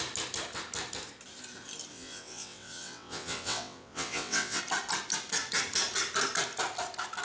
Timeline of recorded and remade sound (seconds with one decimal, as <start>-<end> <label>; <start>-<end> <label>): 0.0-1.9 recorded; 1.9-4.6 remade; 4.6-7.2 recorded